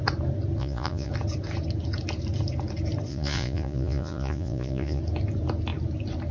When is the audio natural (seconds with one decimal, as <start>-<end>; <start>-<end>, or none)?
0.0-0.6; 1.1-3.1; 5.0-6.3